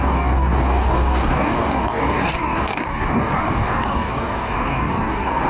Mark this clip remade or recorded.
remade